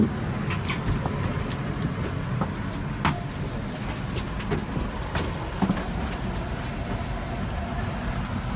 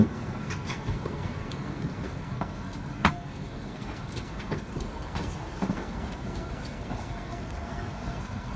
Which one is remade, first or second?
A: second